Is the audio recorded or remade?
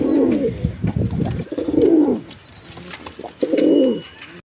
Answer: recorded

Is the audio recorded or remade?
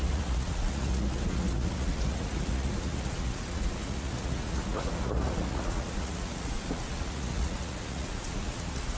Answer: remade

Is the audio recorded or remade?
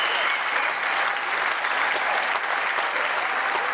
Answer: recorded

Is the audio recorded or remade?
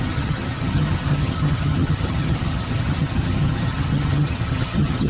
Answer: remade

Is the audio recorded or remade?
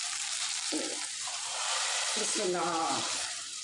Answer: remade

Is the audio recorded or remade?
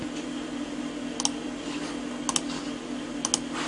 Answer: recorded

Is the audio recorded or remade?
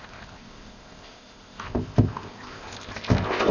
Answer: remade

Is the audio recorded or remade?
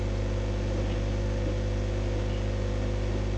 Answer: recorded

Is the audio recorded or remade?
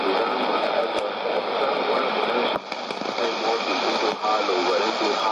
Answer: recorded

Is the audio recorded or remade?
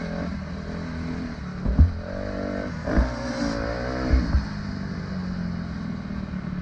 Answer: recorded